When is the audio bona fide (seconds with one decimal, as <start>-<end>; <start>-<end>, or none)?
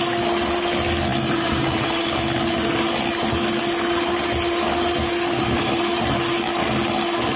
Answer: 0.0-7.4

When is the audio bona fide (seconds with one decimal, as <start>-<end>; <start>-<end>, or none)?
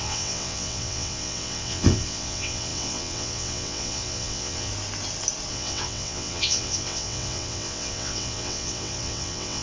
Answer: 4.7-5.5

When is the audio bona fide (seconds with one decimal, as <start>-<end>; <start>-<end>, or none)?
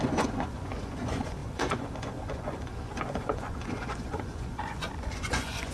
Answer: none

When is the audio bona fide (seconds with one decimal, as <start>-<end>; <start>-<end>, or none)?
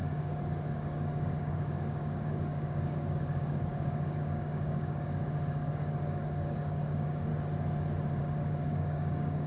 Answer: 7.3-8.2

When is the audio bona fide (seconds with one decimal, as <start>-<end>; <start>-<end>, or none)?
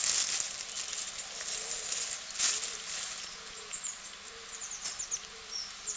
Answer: 0.0-6.0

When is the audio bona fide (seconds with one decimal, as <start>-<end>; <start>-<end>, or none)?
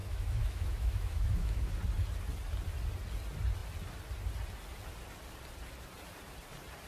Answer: 1.7-6.9